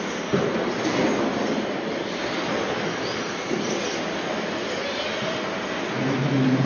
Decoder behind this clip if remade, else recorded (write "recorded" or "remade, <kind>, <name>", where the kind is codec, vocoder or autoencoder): recorded